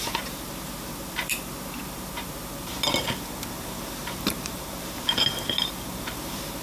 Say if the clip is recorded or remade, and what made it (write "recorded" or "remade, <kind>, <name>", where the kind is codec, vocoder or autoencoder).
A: remade, vocoder, BigVGAN v2